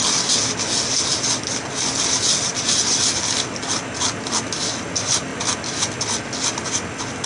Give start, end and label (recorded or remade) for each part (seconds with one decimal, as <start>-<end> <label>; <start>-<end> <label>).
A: 0.0-7.3 recorded